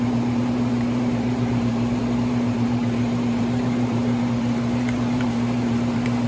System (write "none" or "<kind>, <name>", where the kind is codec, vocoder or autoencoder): vocoder, BigVGAN v2